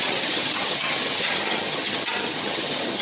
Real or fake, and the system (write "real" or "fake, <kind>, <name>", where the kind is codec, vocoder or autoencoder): fake, vocoder, HiFi-GAN